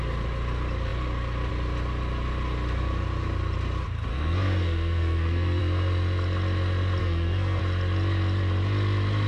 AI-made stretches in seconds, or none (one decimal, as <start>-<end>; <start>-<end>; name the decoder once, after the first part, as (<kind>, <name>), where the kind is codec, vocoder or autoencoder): 4.1-5.6 (codec, SNAC); 7.0-7.6